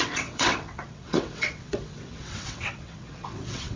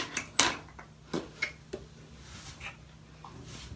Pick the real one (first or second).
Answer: second